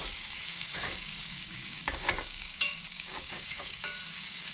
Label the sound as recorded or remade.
remade